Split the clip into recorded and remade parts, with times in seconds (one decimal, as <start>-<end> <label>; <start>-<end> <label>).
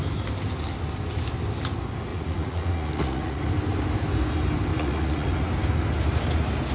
0.0-2.1 recorded; 2.1-3.4 remade; 3.4-4.7 recorded; 4.7-5.5 remade; 5.5-6.7 recorded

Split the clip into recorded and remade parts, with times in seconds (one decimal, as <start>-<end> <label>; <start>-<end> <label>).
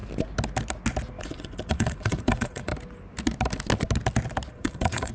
0.0-1.2 recorded; 1.2-2.7 remade; 2.7-4.5 recorded; 4.5-5.1 remade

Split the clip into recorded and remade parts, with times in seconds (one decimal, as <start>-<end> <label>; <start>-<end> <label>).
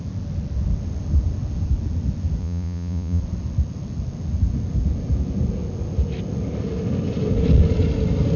0.0-2.4 recorded; 2.4-3.2 remade; 3.2-8.4 recorded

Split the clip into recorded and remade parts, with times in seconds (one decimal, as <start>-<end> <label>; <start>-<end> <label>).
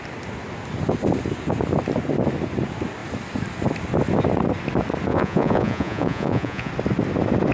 0.0-5.1 recorded; 5.1-6.7 remade; 6.7-7.5 recorded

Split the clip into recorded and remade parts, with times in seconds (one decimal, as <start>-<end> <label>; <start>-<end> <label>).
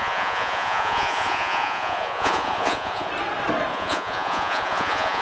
0.0-3.1 remade; 3.1-3.7 recorded; 3.7-5.2 remade